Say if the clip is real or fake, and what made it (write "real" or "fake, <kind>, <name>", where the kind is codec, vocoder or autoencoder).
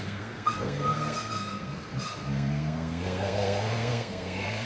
fake, codec, SNAC